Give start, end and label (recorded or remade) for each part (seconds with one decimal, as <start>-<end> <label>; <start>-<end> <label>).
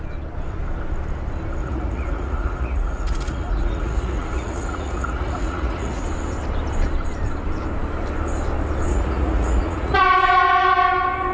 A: 0.0-1.6 recorded; 1.6-6.0 remade; 6.0-8.9 recorded; 8.9-10.0 remade; 10.0-11.3 recorded